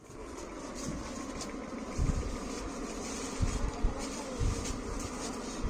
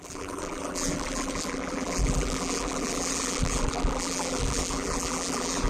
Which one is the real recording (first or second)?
first